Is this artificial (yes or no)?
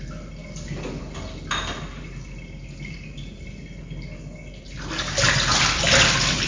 no